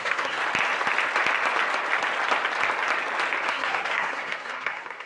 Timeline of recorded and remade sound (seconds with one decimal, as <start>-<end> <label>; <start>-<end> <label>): 0.0-0.4 remade; 0.4-3.5 recorded; 3.5-5.1 remade